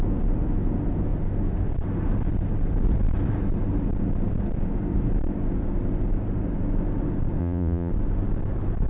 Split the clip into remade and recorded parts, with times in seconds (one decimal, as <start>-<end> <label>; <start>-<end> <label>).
0.0-7.4 recorded; 7.4-7.9 remade; 7.9-8.9 recorded